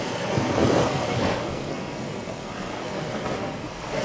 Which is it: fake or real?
fake